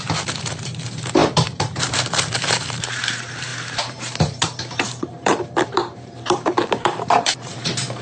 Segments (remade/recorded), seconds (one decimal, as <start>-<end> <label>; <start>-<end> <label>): 0.0-8.0 remade